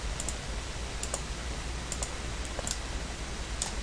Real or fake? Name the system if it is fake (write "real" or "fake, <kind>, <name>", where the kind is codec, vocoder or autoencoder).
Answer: real